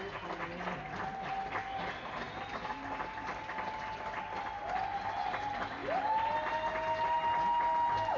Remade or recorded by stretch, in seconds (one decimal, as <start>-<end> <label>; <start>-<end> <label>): 0.0-8.2 recorded